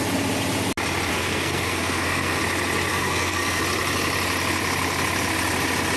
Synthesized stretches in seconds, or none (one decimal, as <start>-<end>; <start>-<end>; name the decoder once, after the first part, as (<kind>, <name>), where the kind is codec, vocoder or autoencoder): 1.1-2.4 (codec, SNAC); 2.9-3.6